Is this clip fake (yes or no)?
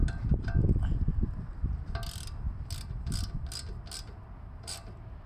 no